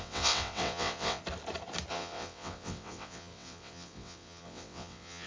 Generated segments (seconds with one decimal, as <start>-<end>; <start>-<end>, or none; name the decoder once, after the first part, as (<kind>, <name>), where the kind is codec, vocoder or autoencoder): 0.0-1.2 (vocoder, WaveNeXt); 1.9-5.3